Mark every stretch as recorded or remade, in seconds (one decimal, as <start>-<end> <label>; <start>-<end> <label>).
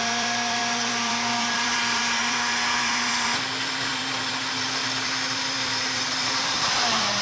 0.0-7.2 remade